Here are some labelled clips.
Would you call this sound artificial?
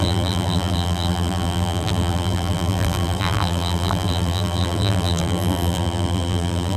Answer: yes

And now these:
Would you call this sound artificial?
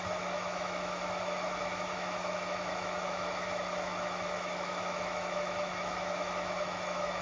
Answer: yes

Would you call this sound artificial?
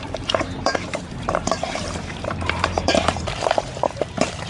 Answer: yes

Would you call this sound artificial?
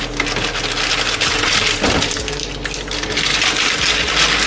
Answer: no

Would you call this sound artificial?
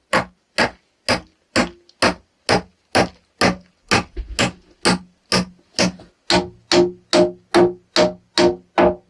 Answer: no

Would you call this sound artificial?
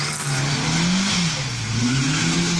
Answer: no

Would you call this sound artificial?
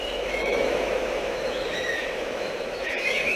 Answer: yes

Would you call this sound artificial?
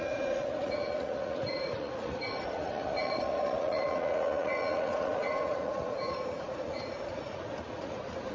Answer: yes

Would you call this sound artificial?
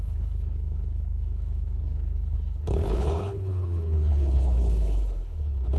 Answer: yes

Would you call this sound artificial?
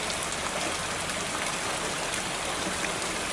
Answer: no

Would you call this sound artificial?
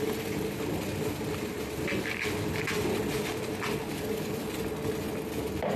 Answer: no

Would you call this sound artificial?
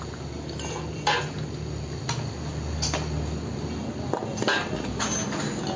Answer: no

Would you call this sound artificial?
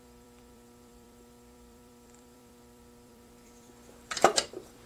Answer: yes